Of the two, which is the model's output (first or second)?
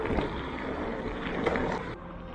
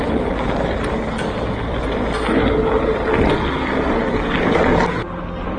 first